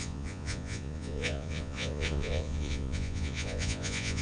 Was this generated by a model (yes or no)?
yes